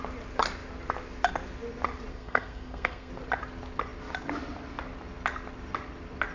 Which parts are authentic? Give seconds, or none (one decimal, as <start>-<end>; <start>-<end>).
0.0-2.1; 3.1-6.3